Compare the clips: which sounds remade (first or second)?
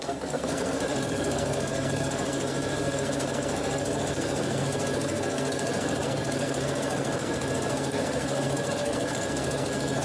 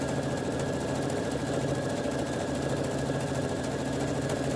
first